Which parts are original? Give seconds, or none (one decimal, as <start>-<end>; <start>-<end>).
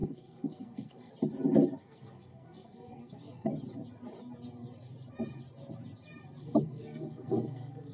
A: 1.1-1.8; 3.5-6.4